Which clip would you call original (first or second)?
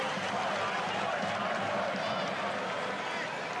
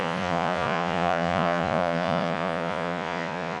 first